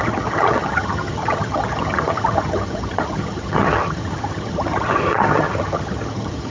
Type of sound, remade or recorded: remade